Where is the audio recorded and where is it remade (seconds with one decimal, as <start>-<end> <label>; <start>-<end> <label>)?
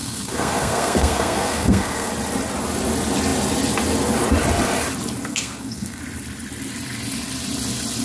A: 0.0-2.1 remade; 2.1-5.3 recorded; 5.3-6.0 remade; 6.0-8.0 recorded